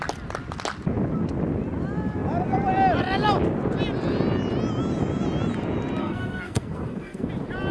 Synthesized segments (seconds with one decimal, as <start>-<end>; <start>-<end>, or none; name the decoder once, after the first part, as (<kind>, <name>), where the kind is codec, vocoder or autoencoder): 6.0-7.3 (codec, SNAC)